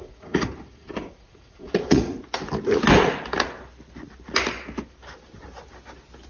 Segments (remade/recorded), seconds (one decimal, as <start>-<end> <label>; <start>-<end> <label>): 0.0-2.1 remade; 2.1-6.3 recorded